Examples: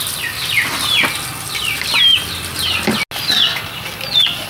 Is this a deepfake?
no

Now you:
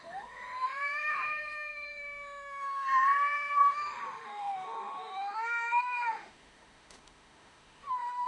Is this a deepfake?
yes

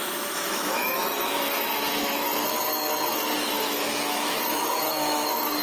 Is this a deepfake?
yes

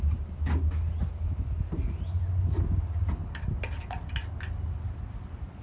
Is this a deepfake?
no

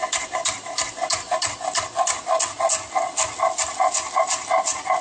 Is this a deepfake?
no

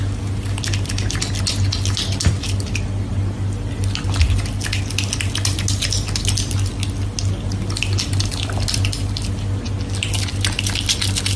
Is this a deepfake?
no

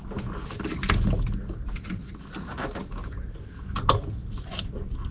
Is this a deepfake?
no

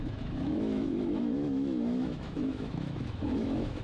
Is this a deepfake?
yes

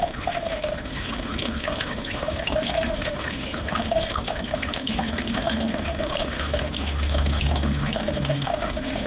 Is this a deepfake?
yes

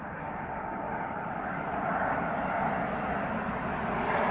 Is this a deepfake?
no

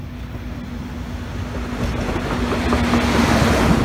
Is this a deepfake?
no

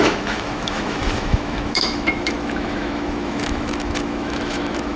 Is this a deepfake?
yes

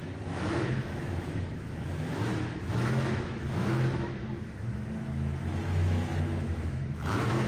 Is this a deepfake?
yes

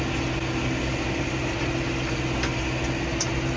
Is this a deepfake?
no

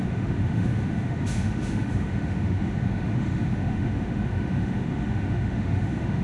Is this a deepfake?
yes